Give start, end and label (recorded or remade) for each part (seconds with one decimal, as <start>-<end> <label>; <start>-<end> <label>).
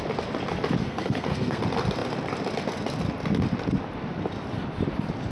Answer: 0.0-0.8 recorded; 0.8-1.6 remade; 1.6-5.3 recorded